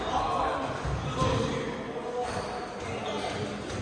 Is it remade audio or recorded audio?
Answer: recorded